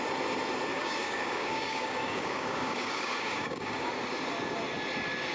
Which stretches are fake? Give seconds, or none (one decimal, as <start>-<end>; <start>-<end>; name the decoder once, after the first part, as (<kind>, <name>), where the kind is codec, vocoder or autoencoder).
0.7-3.9 (codec, DAC)